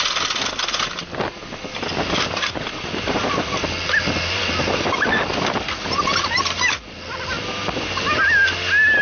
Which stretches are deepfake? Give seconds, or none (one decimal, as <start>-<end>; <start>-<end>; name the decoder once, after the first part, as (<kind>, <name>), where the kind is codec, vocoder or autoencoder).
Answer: none